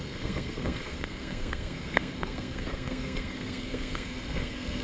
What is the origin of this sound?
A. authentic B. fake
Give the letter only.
B